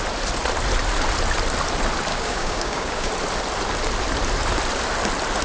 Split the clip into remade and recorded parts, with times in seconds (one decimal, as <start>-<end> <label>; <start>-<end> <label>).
0.0-2.1 recorded; 2.1-3.1 remade; 3.1-5.4 recorded